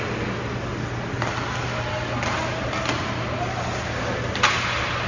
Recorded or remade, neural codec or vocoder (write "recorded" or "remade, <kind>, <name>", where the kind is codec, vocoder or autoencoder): recorded